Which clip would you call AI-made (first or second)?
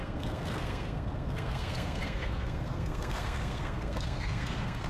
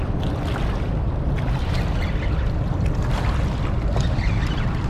first